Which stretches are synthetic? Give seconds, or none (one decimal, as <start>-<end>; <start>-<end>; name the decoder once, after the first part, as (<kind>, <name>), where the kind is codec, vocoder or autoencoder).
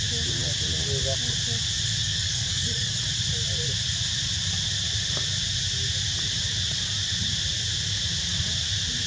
2.0-3.0 (codec, DAC)